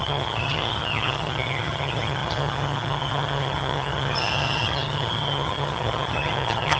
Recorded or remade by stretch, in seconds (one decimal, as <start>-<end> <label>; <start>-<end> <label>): 0.0-6.8 remade